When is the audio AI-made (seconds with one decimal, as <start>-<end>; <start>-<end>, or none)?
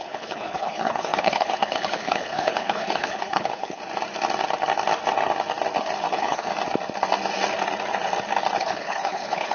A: 0.0-3.8; 6.1-6.5; 8.6-9.5